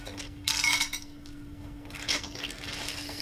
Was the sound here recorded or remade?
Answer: remade